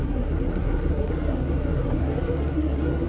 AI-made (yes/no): yes